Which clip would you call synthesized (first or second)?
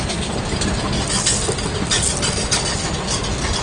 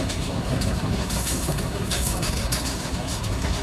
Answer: second